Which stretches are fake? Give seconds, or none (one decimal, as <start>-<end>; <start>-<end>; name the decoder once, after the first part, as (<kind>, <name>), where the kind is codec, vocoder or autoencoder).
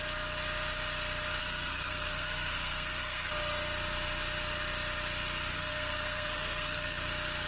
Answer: 1.4-3.3 (codec, SNAC); 5.5-7.1